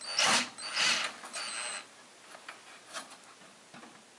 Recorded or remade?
recorded